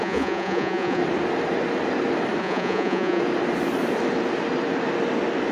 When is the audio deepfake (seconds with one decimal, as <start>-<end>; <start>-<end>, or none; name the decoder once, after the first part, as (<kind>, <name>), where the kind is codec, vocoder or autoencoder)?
0.0-1.0 (vocoder, Vocos); 2.4-3.2